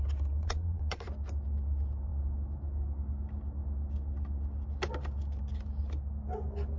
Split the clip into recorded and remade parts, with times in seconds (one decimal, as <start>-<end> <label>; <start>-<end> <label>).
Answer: 0.0-0.4 recorded; 0.4-1.0 remade; 1.0-6.8 recorded